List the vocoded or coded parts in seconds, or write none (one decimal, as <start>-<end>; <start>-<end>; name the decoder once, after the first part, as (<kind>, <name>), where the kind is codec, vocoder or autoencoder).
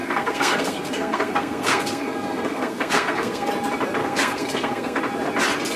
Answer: 0.0-3.5 (codec, SNAC); 4.0-5.0